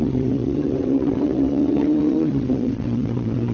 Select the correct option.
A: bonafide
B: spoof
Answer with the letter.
B